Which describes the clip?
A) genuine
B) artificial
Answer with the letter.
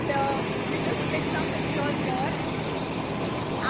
A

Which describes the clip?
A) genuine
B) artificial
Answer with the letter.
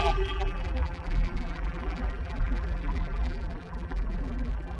B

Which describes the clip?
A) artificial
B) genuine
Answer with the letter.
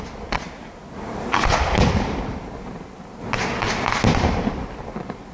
B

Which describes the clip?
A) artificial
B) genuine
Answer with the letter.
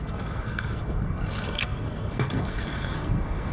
A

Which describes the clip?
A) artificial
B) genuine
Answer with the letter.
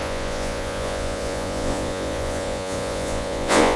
A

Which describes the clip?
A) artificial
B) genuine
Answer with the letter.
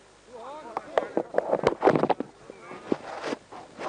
B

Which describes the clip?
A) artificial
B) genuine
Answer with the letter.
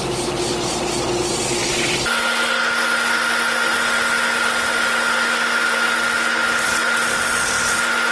B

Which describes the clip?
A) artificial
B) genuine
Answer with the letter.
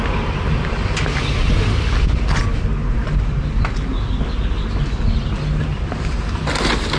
B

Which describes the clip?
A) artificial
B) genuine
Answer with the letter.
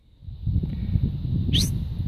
B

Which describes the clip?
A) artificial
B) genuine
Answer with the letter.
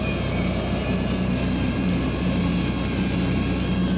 B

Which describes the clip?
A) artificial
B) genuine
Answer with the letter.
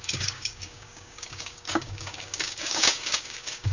A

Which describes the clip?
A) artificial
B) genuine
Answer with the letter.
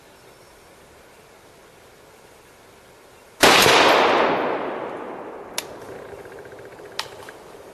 B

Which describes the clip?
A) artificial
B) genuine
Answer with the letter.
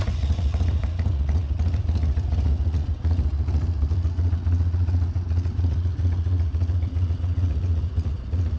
A